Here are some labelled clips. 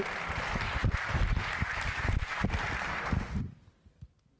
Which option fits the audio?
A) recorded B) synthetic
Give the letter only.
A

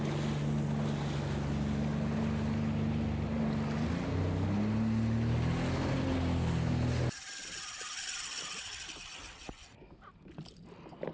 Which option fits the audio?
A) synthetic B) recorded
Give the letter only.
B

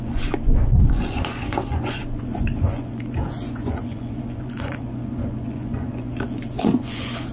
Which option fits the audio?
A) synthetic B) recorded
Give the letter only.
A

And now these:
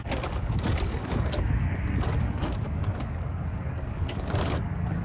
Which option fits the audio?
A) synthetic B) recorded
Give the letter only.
A